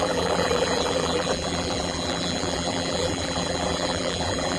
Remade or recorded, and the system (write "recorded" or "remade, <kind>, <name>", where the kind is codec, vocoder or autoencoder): remade, vocoder, BigVGAN v2